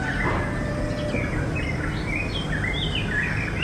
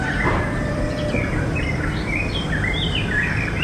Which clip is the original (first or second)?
first